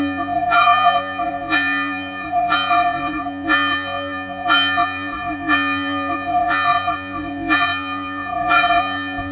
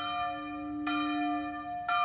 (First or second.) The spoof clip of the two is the first